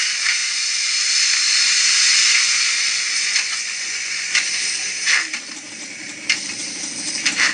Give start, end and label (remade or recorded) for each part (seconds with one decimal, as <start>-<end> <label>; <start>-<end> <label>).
0.0-0.4 recorded; 0.4-1.1 remade; 1.1-2.2 recorded; 2.2-4.5 remade; 4.5-7.5 recorded